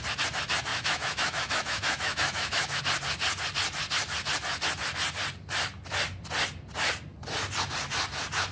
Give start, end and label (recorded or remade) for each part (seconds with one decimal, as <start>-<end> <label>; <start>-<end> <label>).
0.0-0.7 recorded; 0.7-2.8 remade; 2.8-8.5 recorded